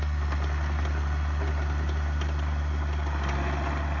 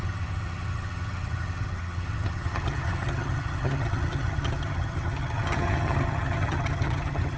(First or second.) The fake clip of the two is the second